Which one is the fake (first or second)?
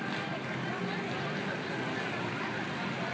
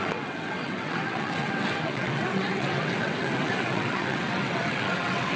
second